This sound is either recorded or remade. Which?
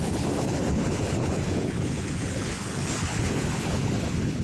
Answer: remade